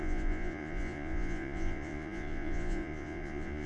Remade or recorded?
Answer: remade